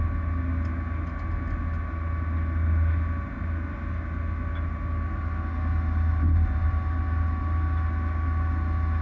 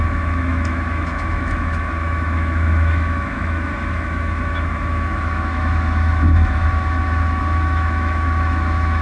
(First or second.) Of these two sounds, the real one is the first